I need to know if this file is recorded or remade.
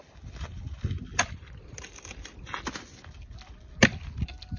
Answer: recorded